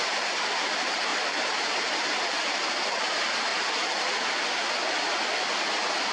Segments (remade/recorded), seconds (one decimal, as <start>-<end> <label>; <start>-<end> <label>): 0.0-6.1 recorded

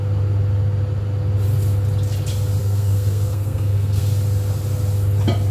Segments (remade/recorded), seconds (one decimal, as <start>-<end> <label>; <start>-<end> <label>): 0.0-2.6 recorded; 2.6-4.0 remade; 4.0-5.5 recorded

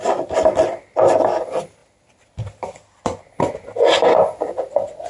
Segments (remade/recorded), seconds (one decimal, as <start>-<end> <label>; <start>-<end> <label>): 0.0-5.1 recorded

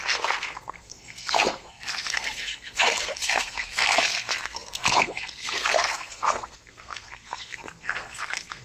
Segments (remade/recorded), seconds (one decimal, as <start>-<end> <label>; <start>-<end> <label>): 0.0-8.6 remade

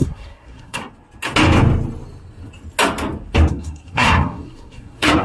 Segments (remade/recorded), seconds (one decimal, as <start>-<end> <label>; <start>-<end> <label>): 0.0-0.8 remade; 0.8-3.5 recorded; 3.5-5.2 remade

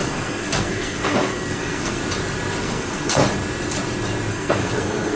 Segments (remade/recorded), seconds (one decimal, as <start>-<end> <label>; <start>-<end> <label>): 0.0-2.0 remade; 2.0-2.6 recorded; 2.6-3.2 remade; 3.2-4.3 recorded; 4.3-5.2 remade

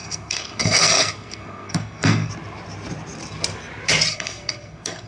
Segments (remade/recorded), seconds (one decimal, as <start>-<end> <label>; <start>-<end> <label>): 0.0-2.3 remade; 2.3-4.1 recorded; 4.1-5.1 remade

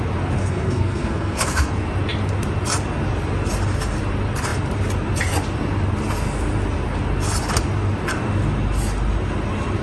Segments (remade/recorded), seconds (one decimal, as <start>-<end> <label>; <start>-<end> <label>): 0.0-0.4 recorded; 0.4-1.7 remade; 1.7-9.8 recorded